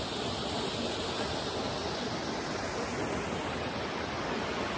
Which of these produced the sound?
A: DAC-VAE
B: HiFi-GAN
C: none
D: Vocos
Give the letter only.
C